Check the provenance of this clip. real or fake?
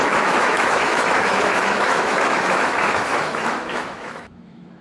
fake